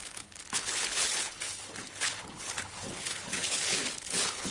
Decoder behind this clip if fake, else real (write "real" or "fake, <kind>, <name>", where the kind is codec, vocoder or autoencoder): fake, codec, HILCodec